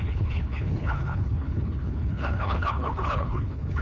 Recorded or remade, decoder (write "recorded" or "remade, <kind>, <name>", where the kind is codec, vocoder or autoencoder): remade, codec, HILCodec